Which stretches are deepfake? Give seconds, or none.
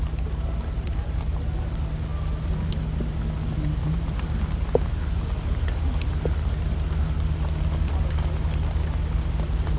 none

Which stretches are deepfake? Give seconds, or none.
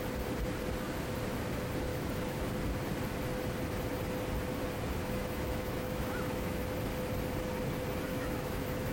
1.9-2.5; 5.0-6.6; 8.1-8.9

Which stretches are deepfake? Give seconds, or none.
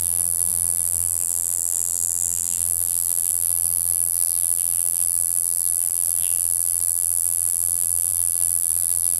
0.0-9.2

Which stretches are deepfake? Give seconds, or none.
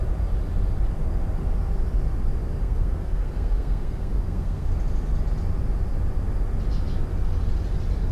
2.6-4.7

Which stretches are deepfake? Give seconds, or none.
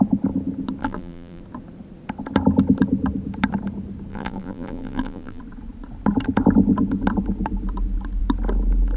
0.8-1.4; 4.1-5.4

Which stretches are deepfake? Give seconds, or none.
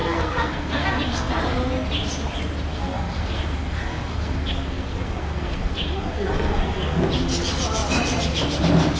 0.0-1.3; 2.7-7.0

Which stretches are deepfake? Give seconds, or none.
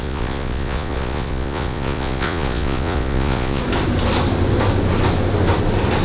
0.0-3.6